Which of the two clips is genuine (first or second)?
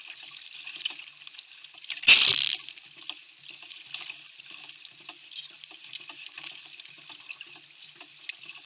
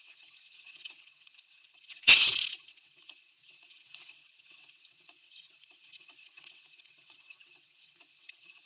first